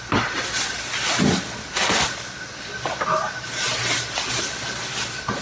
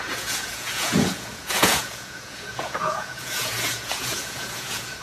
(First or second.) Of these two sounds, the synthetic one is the second